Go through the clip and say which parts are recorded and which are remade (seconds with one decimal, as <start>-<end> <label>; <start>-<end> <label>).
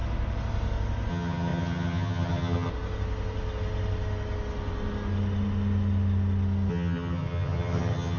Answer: 0.0-1.1 recorded; 1.1-2.7 remade; 2.7-6.7 recorded; 6.7-8.2 remade